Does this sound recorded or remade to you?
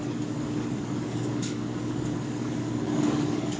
remade